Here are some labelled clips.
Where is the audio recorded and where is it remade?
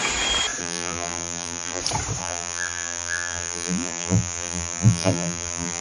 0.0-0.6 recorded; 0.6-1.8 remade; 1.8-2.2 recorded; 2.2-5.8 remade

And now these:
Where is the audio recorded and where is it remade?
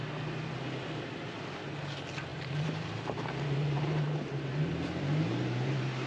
0.0-2.3 recorded; 2.3-6.1 remade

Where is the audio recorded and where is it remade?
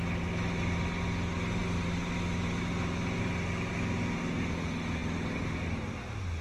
0.0-6.4 recorded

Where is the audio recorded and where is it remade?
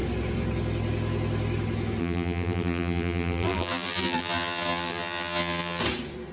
0.0-2.0 recorded; 2.0-5.8 remade; 5.8-6.3 recorded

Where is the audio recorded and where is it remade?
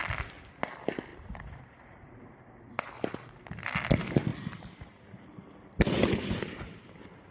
0.0-1.1 recorded; 1.1-2.5 remade; 2.5-4.3 recorded; 4.3-6.4 remade; 6.4-7.3 recorded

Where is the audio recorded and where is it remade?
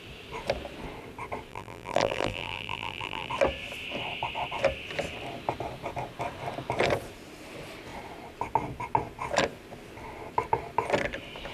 0.0-1.5 recorded; 1.5-3.3 remade; 3.3-11.5 recorded